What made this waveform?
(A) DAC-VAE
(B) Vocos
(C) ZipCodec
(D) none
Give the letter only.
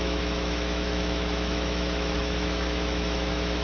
A